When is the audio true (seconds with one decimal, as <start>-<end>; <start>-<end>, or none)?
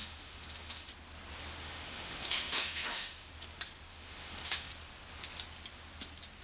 0.9-1.6; 3.3-3.9; 4.7-6.4